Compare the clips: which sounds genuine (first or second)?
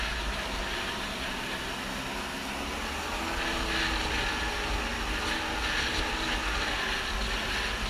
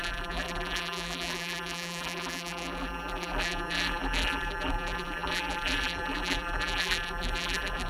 first